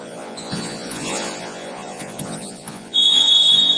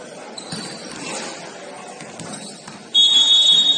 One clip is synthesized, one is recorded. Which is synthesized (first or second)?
first